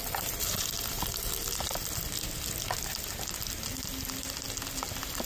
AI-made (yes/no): no